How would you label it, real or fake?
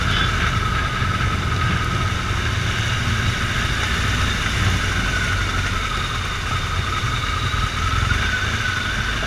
real